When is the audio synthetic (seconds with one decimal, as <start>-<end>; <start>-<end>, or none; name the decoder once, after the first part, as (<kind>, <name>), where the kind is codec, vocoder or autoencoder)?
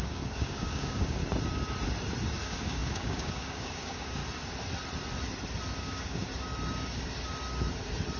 0.0-1.2 (codec, DAC); 2.4-4.2; 5.8-6.3